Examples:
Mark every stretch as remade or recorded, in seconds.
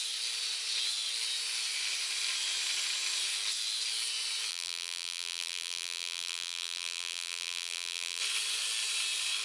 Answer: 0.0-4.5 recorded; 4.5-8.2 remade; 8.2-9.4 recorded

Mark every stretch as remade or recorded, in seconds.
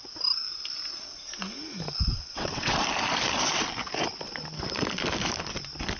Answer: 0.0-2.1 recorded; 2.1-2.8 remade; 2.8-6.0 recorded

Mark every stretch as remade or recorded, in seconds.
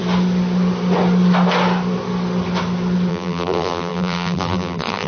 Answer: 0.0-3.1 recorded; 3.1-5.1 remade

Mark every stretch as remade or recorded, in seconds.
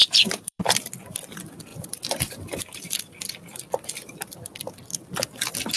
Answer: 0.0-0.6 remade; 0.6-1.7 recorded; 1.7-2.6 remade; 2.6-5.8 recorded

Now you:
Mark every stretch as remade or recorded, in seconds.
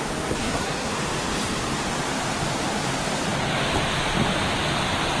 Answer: 0.0-0.4 recorded; 0.4-0.9 remade; 0.9-5.2 recorded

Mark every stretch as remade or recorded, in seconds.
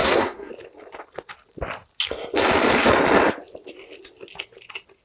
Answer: 0.0-0.5 remade; 0.5-5.0 recorded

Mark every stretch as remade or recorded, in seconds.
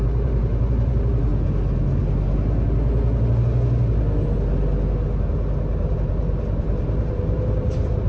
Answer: 0.0-1.3 remade; 1.3-5.9 recorded; 5.9-8.1 remade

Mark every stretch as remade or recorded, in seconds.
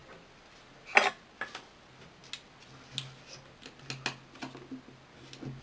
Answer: 0.0-5.6 recorded